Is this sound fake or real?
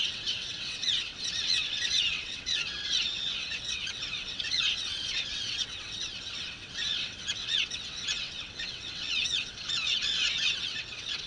fake